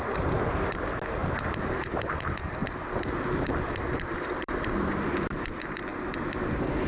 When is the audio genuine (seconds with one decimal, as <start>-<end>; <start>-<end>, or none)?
0.0-1.2; 5.3-6.9